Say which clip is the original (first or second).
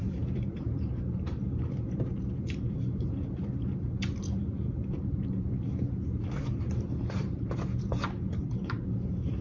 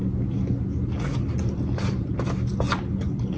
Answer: second